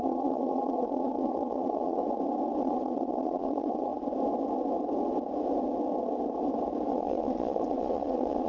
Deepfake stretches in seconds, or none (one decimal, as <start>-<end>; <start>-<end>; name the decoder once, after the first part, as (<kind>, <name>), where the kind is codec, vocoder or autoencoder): 0.0-2.0 (vocoder, Vocos); 2.6-3.9; 6.9-8.5